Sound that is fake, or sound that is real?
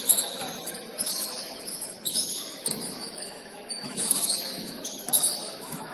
fake